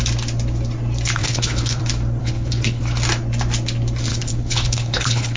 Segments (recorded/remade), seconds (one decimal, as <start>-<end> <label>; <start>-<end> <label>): 0.0-1.2 recorded; 1.2-1.8 remade; 1.8-2.2 recorded; 2.2-2.8 remade; 2.8-4.1 recorded; 4.1-5.4 remade